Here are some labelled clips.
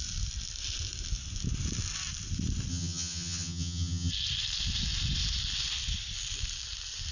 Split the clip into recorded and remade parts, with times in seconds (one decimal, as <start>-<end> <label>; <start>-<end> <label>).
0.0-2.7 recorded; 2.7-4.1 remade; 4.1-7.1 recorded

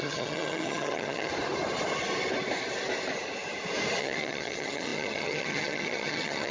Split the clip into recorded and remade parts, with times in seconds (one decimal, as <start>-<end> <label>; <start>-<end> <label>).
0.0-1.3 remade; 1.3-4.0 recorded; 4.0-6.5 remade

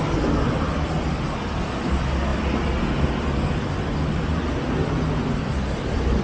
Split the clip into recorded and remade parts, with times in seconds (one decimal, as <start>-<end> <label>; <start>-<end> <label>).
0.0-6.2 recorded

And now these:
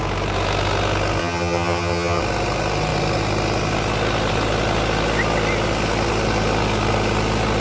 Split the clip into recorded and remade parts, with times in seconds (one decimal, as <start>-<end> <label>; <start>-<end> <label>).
0.0-1.2 recorded; 1.2-2.2 remade; 2.2-7.6 recorded

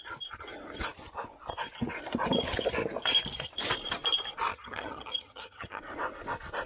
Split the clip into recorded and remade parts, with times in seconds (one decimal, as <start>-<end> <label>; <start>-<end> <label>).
0.0-4.5 recorded; 4.5-5.8 remade; 5.8-6.7 recorded